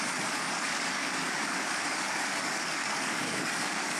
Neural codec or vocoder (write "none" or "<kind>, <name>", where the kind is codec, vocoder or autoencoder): codec, DAC